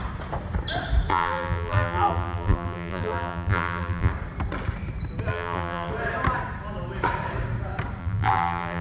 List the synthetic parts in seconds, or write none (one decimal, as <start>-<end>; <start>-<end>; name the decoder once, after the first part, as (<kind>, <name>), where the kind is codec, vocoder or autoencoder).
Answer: 1.1-4.1 (vocoder, BigVGAN v2); 5.3-5.9; 8.0-8.8